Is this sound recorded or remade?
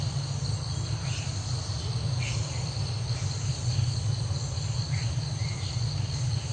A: recorded